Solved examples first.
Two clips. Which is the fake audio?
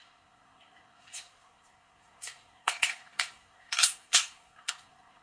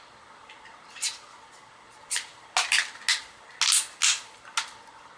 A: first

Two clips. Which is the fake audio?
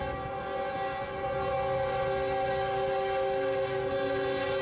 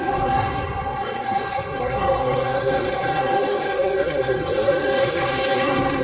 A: second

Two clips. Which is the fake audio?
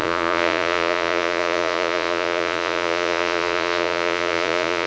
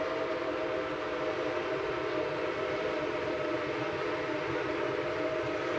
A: first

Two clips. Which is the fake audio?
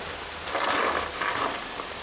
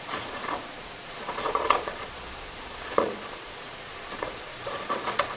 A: second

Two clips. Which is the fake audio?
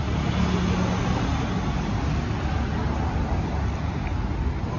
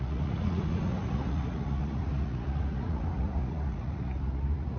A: second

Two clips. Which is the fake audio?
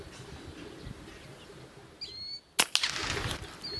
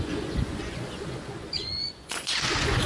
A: second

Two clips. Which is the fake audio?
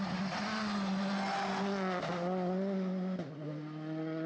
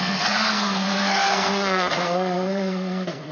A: second